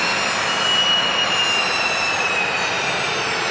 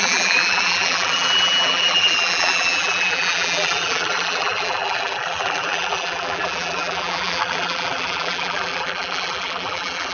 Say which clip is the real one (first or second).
first